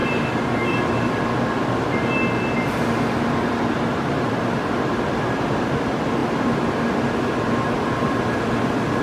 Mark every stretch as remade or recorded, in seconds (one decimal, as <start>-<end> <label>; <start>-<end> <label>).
0.0-1.1 remade; 1.1-9.0 recorded